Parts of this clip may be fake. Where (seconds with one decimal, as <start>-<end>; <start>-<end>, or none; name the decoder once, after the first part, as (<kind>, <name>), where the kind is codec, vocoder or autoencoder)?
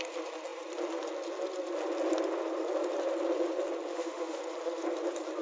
3.9-4.4 (autoencoder, DAC-VAE)